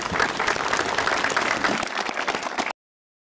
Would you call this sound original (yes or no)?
yes